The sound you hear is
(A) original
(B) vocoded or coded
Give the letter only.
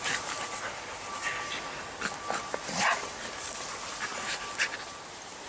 A